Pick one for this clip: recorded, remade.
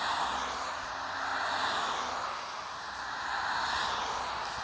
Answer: recorded